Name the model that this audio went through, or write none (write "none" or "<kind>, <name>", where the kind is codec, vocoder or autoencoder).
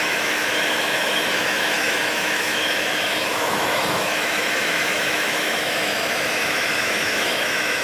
autoencoder, DAC-VAE